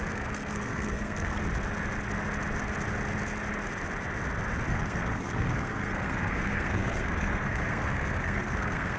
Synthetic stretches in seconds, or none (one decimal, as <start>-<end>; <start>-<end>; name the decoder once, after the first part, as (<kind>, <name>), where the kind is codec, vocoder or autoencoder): 0.0-1.4 (codec, SNAC); 4.7-9.0